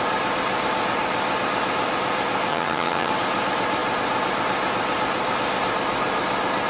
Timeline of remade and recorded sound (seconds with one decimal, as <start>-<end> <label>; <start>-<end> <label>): 0.0-2.5 recorded; 2.5-3.1 remade; 3.1-6.7 recorded